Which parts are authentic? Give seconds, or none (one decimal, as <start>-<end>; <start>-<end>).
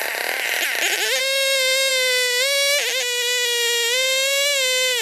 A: 0.0-5.0